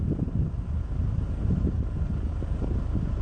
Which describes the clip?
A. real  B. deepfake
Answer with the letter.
A